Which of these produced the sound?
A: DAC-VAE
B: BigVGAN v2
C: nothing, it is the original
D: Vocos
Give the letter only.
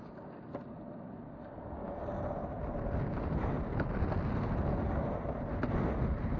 C